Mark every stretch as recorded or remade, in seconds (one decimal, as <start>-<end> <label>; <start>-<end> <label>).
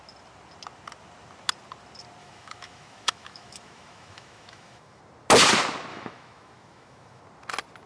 0.0-2.2 recorded; 2.2-5.0 remade; 5.0-5.9 recorded; 5.9-7.2 remade; 7.2-7.9 recorded